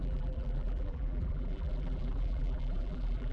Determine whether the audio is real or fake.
fake